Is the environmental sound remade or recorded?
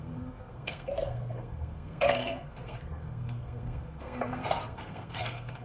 remade